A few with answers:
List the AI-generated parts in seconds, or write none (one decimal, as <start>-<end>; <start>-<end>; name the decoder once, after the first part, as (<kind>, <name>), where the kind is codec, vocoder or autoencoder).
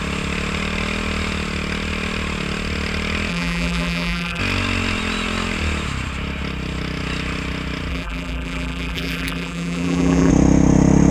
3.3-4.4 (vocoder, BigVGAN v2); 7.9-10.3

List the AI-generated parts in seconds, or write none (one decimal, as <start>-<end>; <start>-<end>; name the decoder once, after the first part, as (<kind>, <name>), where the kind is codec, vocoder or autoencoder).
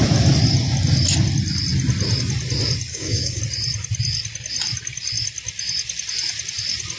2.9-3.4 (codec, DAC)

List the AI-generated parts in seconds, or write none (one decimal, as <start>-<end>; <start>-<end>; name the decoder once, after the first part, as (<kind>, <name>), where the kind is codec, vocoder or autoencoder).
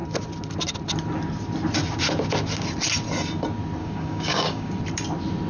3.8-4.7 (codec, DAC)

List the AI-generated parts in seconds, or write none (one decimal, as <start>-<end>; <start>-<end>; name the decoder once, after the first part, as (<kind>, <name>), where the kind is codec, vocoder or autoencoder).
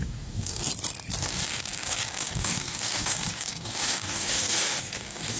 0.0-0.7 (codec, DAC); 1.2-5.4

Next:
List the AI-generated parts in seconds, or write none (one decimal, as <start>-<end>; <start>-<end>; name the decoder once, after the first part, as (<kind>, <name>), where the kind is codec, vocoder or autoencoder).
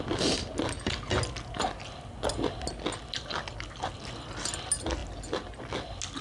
none